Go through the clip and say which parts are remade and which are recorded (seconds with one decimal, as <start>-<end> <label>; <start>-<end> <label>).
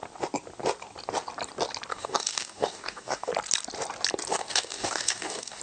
0.0-1.9 recorded; 1.9-3.3 remade; 3.3-4.3 recorded; 4.3-5.6 remade